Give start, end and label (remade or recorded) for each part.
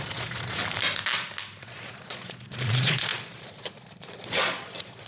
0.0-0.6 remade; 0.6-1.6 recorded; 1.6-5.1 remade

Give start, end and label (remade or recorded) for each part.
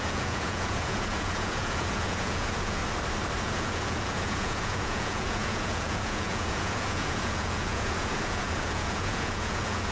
0.0-2.8 remade; 2.8-3.4 recorded; 3.4-9.9 remade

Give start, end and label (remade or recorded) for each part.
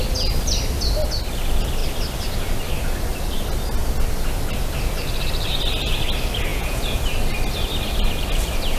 0.0-6.5 recorded; 6.5-7.0 remade; 7.0-8.8 recorded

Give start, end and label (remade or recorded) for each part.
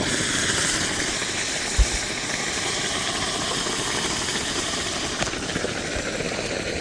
0.0-6.8 recorded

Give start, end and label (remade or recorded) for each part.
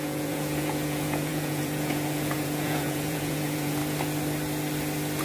0.0-3.8 remade; 3.8-5.2 recorded